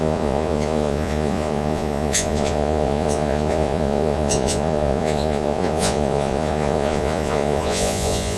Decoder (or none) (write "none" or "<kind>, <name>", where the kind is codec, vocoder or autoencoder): vocoder, Vocos